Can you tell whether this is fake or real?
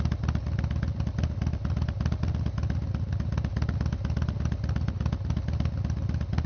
real